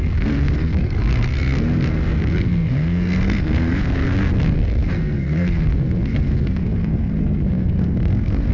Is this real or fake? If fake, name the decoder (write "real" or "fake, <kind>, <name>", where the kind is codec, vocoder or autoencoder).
fake, codec, SNAC